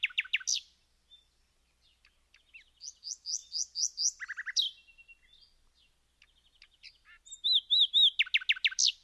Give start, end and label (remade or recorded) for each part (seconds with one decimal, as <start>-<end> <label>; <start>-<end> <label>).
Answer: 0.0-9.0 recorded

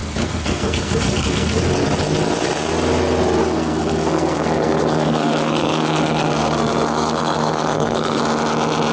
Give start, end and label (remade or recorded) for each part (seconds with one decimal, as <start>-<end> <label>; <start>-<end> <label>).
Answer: 0.0-1.6 remade; 1.6-3.4 recorded; 3.4-8.2 remade; 8.2-8.9 recorded

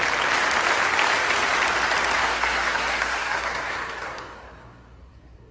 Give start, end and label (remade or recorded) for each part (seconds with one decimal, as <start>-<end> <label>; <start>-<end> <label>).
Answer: 0.0-2.2 recorded; 2.2-5.5 remade